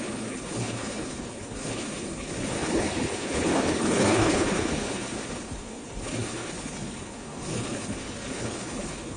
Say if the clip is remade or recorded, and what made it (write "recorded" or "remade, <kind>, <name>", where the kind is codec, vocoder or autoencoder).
remade, codec, HILCodec